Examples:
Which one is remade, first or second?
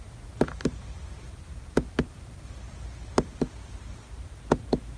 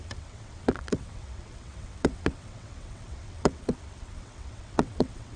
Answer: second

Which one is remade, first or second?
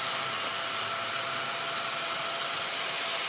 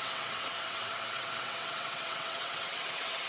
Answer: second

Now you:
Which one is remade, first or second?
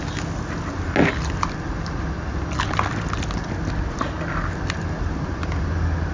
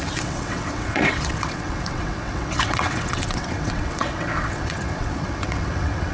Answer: second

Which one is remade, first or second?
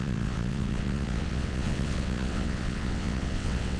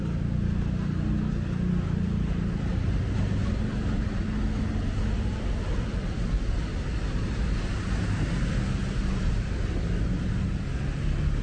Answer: first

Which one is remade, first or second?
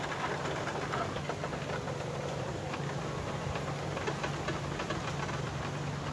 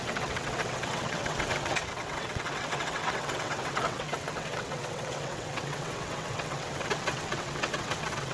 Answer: second